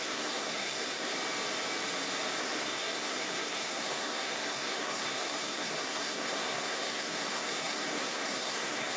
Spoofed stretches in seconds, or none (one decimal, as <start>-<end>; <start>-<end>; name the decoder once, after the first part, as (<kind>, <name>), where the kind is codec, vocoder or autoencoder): 0.0-1.1 (codec, SNAC); 2.4-9.0